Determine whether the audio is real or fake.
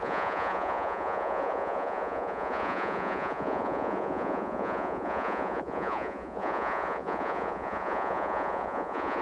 fake